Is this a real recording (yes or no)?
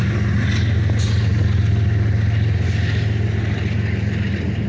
yes